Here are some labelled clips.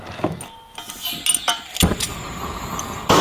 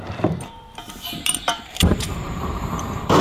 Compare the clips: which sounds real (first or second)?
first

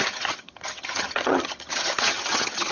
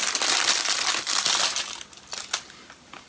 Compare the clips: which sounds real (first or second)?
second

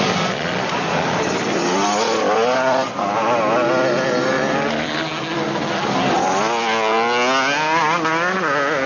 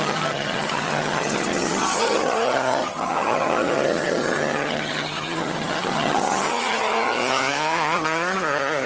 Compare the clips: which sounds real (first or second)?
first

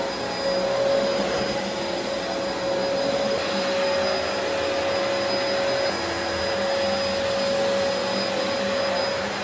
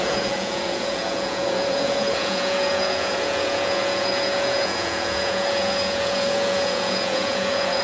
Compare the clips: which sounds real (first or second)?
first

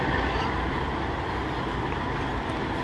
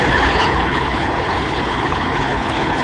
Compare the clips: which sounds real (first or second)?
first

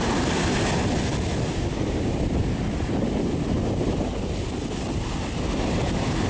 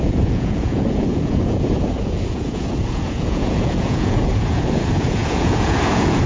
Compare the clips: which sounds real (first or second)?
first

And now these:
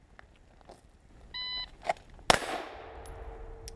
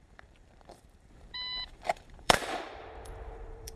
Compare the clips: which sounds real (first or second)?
first